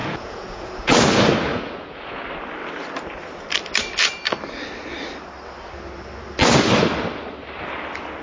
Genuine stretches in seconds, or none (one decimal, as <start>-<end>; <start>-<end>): 0.9-1.5; 2.2-8.2